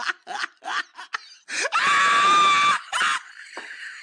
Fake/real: real